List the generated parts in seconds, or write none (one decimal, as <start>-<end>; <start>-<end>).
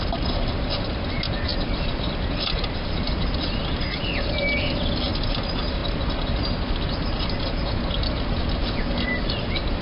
none